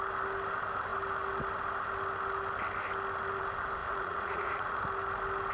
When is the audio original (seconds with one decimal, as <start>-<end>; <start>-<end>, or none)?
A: 0.0-3.8; 4.8-5.5